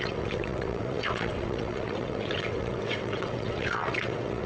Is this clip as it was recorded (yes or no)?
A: no